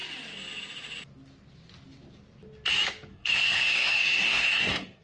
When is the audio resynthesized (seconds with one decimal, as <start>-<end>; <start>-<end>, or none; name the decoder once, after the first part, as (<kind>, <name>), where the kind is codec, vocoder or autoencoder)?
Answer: 3.1-5.0 (codec, SNAC)